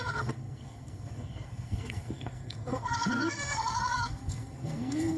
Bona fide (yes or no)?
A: no